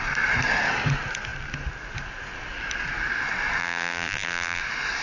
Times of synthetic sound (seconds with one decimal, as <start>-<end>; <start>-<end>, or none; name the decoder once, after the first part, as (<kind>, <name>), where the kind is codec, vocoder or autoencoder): 3.6-4.6 (vocoder, BigVGAN v2)